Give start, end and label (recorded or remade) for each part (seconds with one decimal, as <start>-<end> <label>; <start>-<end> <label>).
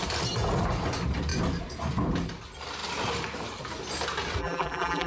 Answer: 0.0-4.4 recorded; 4.4-5.1 remade